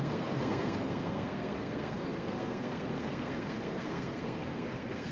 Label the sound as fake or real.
fake